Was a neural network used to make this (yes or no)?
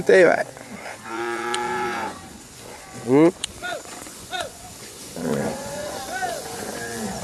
yes